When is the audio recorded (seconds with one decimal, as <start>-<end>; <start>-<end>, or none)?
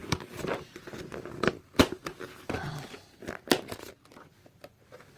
0.0-5.2